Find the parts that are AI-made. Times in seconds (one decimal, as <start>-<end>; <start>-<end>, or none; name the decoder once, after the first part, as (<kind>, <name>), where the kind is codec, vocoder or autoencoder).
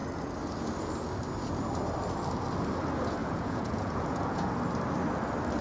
3.2-4.5 (vocoder, Vocos)